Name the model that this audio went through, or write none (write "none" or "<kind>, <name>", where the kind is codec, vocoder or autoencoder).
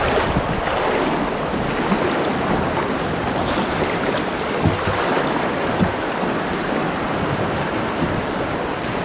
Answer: none